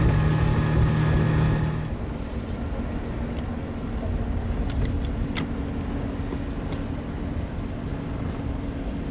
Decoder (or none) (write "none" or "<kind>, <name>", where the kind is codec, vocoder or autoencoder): none